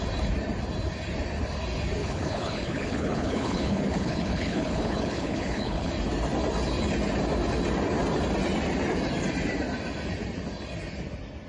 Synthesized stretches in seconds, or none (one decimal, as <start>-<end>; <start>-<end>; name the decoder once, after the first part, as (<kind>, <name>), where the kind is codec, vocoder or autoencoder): 2.0-5.9 (codec, HILCodec)